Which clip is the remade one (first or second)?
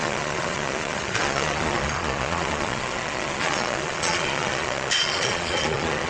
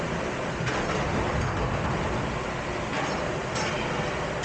first